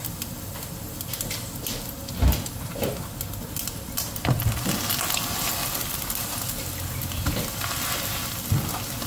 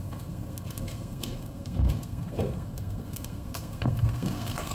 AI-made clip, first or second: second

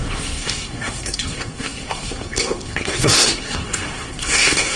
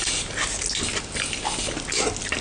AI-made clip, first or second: first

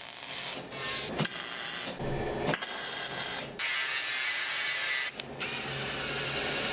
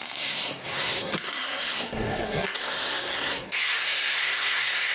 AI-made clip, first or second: second